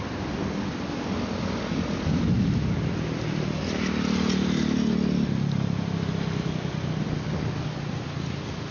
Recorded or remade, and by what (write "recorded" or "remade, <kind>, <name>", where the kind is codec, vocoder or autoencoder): recorded